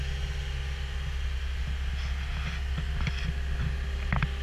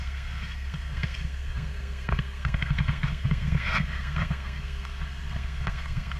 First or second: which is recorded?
first